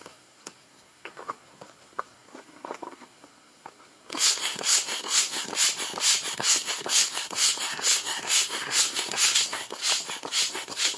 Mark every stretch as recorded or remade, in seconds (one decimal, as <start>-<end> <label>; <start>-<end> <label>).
0.0-5.5 remade; 5.5-6.3 recorded; 6.3-9.8 remade; 9.8-10.5 recorded; 10.5-11.0 remade